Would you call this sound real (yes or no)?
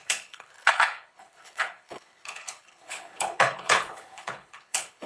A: no